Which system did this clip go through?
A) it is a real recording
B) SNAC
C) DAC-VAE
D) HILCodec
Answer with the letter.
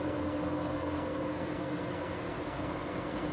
B